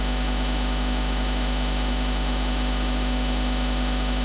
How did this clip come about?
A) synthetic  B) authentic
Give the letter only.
A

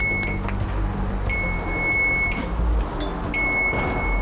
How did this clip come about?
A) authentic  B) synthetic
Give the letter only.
A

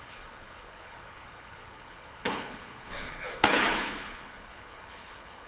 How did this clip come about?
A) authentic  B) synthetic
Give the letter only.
B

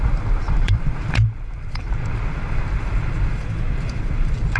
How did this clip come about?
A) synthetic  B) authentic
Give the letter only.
A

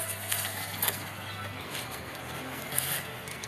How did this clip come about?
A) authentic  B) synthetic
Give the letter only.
B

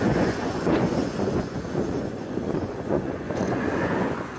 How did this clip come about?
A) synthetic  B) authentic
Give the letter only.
A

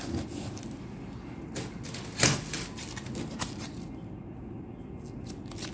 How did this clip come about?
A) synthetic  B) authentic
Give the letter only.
B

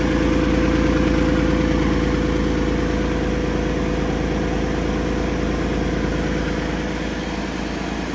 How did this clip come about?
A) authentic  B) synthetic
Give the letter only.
A